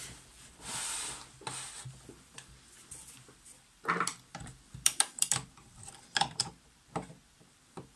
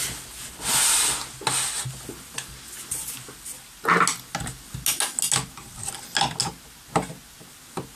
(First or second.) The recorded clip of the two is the second